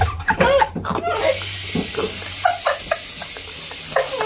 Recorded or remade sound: recorded